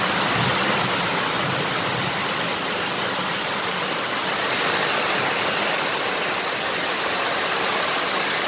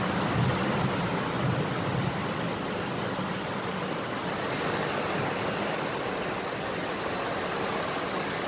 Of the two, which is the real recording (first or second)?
second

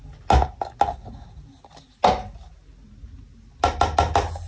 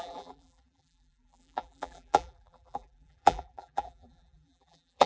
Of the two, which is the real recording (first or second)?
first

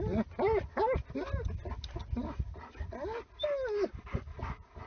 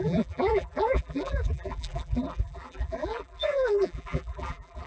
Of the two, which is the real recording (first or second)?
first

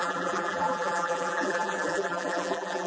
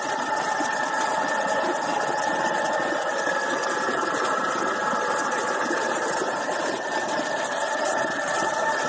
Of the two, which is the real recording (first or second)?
second